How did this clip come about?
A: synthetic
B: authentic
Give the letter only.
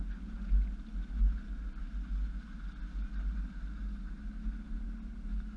B